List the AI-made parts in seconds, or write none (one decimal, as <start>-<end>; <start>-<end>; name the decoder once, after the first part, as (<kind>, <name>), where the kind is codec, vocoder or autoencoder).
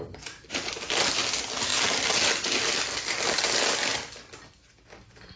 none